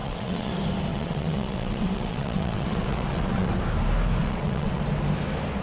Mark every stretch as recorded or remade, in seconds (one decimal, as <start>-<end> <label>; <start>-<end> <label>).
0.0-0.5 remade; 0.5-0.9 recorded; 0.9-3.5 remade; 3.5-4.2 recorded; 4.2-4.8 remade; 4.8-5.6 recorded